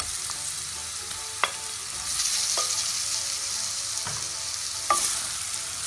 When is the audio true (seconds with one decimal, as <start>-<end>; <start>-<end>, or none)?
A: 0.0-5.9